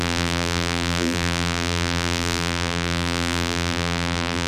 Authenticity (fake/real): fake